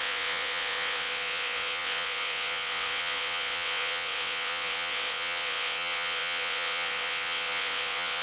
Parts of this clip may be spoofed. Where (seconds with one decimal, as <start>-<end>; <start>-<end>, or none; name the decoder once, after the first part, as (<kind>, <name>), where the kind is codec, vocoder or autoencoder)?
0.0-8.2 (vocoder, WaveNeXt)